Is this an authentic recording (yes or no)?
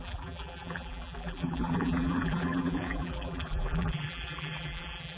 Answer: no